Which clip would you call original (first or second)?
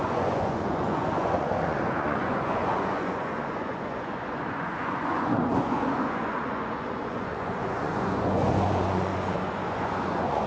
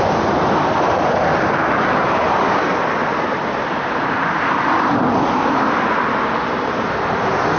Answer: second